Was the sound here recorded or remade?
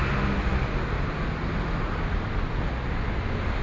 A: recorded